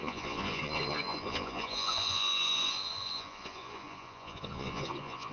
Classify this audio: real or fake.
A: fake